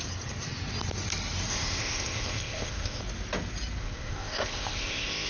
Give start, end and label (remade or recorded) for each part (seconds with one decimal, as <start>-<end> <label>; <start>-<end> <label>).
0.0-1.5 recorded; 1.5-3.0 remade; 3.0-3.8 recorded; 3.8-5.3 remade